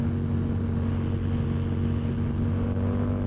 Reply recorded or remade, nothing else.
recorded